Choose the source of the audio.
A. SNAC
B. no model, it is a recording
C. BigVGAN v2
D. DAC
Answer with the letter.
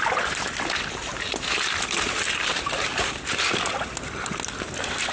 B